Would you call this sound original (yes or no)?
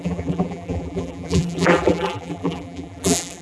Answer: no